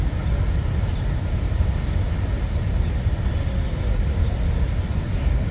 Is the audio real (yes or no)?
yes